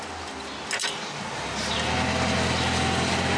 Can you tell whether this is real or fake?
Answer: real